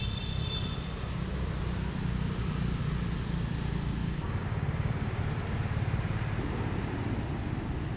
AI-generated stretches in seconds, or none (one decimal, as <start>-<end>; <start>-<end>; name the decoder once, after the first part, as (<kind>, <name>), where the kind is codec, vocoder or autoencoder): 4.0-5.2 (codec, DAC)